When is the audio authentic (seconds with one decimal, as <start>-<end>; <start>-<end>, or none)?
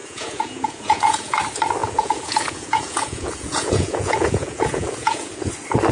1.4-1.8; 5.3-5.9